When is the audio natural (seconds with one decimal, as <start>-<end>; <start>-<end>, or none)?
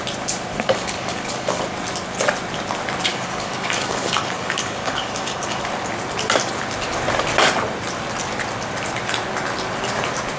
0.0-0.5; 1.6-3.1; 5.7-10.4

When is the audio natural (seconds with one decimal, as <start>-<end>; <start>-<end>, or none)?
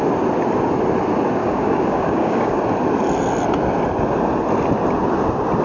0.0-1.4; 2.6-5.6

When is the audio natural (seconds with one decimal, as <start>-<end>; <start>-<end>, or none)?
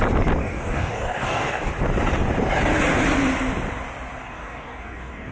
0.0-0.4; 1.7-4.2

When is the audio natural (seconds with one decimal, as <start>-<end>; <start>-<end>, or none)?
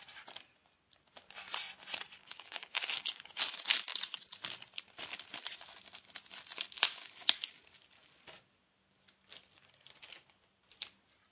0.0-2.2; 3.4-11.3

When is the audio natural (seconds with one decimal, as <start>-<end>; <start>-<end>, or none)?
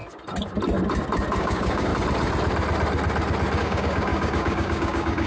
0.0-1.4; 1.9-3.6